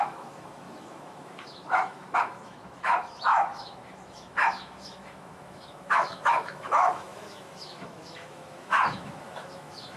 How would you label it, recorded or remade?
remade